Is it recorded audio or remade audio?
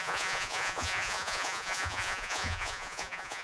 remade